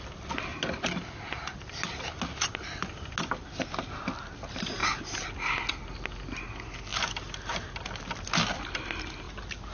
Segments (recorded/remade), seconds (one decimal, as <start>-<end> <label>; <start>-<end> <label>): 0.0-9.7 recorded